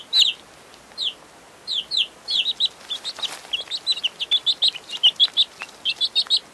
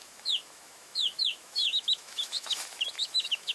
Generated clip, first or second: second